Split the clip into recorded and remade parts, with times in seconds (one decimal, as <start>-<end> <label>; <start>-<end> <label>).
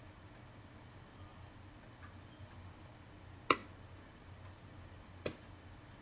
0.0-6.0 recorded